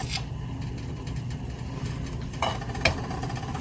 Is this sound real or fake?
real